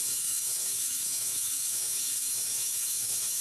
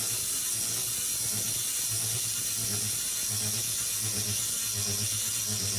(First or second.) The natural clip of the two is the second